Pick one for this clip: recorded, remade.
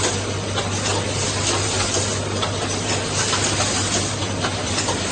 recorded